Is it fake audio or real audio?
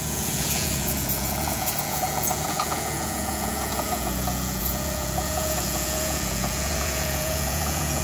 fake